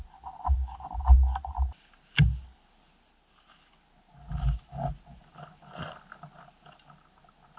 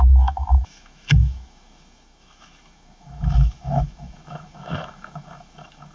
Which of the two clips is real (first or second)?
first